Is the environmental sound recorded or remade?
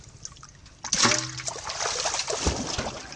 recorded